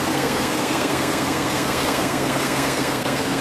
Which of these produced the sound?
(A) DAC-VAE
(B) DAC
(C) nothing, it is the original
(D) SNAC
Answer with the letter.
D